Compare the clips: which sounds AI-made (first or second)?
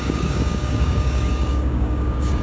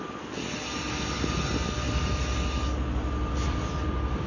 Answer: first